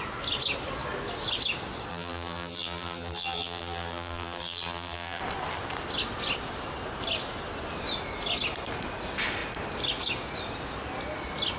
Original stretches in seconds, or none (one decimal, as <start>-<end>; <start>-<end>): 0.0-1.9; 5.2-11.6